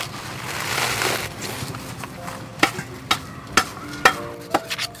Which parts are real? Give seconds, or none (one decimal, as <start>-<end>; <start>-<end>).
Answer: 0.0-5.0